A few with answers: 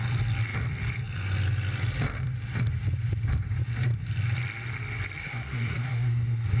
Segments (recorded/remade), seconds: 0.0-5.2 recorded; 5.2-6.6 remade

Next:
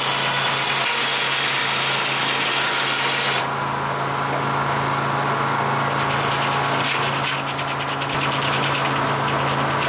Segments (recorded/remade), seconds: 0.0-9.9 recorded

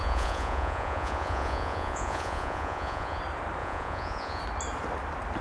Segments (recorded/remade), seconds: 0.0-3.2 remade; 3.2-3.6 recorded; 3.6-4.4 remade; 4.4-5.4 recorded

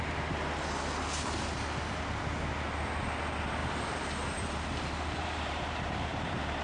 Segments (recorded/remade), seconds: 0.0-3.6 recorded; 3.6-6.6 remade

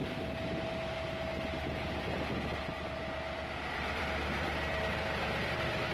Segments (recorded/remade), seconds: 0.0-2.7 recorded; 2.7-5.9 remade